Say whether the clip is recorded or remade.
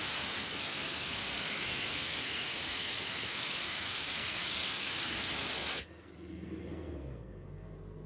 remade